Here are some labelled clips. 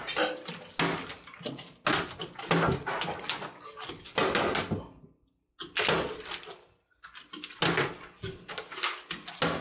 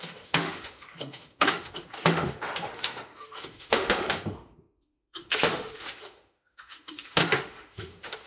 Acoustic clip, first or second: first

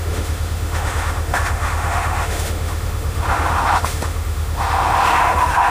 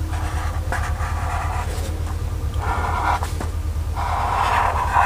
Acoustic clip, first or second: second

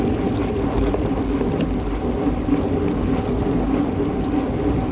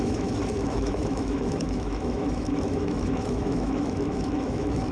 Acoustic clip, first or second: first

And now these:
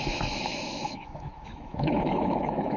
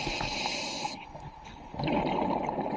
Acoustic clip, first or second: second